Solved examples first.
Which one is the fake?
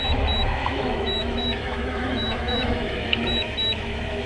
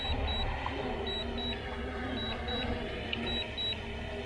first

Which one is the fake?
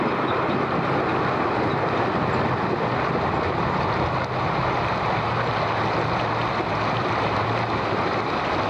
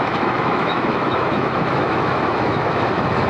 second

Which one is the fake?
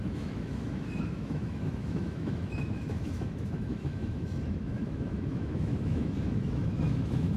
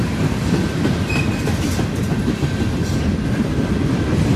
first